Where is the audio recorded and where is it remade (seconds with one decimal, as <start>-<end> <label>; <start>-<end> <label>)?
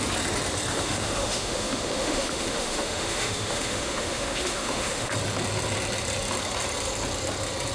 0.0-0.7 recorded; 0.7-5.1 remade; 5.1-7.7 recorded